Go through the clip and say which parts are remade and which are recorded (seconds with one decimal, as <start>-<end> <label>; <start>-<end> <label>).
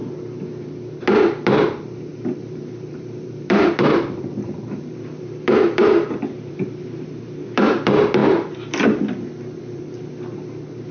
0.0-2.1 recorded; 2.1-7.2 remade; 7.2-8.2 recorded; 8.2-10.0 remade; 10.0-10.9 recorded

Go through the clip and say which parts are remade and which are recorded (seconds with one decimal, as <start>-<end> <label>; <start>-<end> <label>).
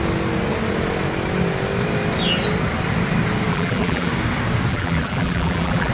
0.0-3.5 recorded; 3.5-4.1 remade; 4.1-4.7 recorded; 4.7-5.9 remade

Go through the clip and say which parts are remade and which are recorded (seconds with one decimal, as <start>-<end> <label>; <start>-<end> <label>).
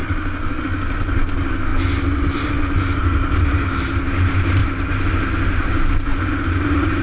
0.0-4.6 recorded; 4.6-5.1 remade; 5.1-6.1 recorded; 6.1-7.0 remade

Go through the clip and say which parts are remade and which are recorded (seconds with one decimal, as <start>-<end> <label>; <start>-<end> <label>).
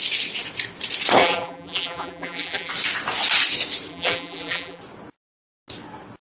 0.0-1.2 recorded; 1.2-2.7 remade; 2.7-3.9 recorded; 3.9-4.8 remade; 4.8-6.4 recorded